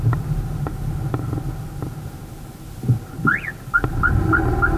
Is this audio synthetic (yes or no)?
no